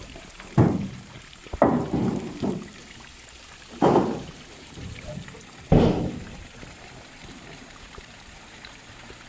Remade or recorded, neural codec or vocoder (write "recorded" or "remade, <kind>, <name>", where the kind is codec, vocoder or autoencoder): remade, vocoder, BigVGAN v2